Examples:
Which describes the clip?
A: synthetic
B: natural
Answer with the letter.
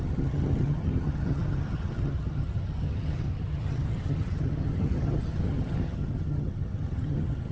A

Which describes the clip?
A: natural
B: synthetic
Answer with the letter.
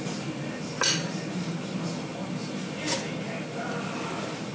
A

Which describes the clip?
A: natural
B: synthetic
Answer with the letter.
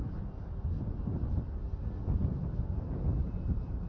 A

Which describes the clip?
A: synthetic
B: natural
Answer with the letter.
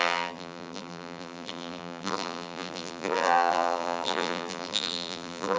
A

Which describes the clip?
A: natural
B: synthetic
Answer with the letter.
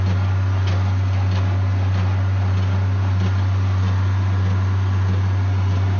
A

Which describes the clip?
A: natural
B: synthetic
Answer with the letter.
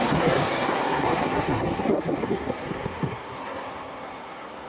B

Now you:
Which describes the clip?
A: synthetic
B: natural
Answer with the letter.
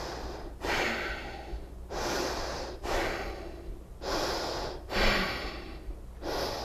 B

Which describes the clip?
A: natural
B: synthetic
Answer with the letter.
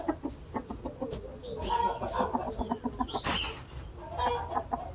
A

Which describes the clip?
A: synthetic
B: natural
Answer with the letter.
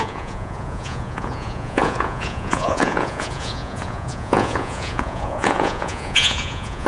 A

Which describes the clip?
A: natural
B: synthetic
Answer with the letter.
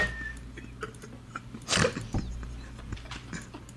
A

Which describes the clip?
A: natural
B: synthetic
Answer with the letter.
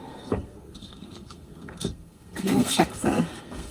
B